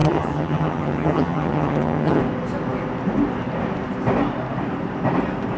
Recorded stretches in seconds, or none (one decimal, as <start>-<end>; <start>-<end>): 2.2-5.6

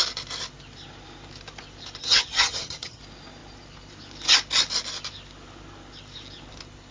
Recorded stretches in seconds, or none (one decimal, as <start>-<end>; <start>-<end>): 0.0-2.0; 3.0-6.9

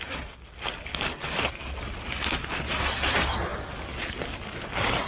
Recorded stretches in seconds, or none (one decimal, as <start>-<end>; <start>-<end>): 0.0-5.1

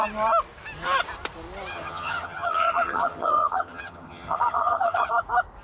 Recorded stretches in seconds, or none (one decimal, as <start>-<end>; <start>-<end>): 0.0-1.7; 5.1-5.6

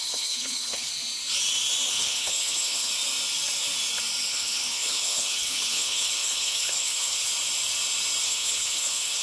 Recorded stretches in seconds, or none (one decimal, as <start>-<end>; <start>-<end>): 0.9-1.9; 2.9-4.3; 7.3-8.2

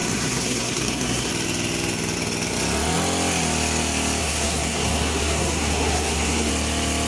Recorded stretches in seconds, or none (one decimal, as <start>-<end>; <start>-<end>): 1.3-4.2; 6.5-7.1

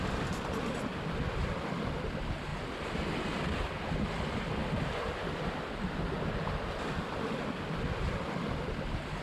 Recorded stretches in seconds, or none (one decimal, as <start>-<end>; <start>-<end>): 0.0-9.2